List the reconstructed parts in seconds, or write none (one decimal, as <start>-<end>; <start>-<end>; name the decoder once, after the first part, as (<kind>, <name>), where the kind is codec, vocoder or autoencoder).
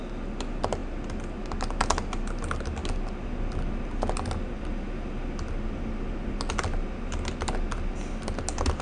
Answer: none